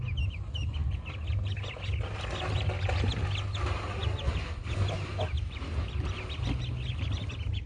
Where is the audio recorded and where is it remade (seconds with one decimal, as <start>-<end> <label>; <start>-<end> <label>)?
0.0-7.7 recorded